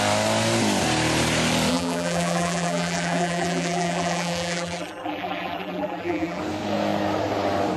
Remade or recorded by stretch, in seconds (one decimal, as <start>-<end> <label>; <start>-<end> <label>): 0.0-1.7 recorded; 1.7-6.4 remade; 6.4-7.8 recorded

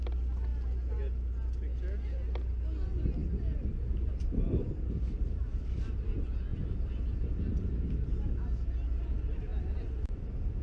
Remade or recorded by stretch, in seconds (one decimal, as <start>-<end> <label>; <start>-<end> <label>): 0.0-3.2 recorded; 3.2-5.6 remade; 5.6-6.5 recorded; 6.5-7.9 remade; 7.9-9.5 recorded; 9.5-10.6 remade

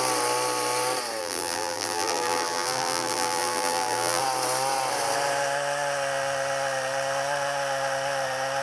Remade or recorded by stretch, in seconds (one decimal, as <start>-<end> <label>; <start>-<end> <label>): 0.0-1.2 recorded; 1.2-4.2 remade; 4.2-8.6 recorded